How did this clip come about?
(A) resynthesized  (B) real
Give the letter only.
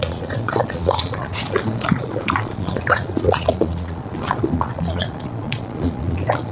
A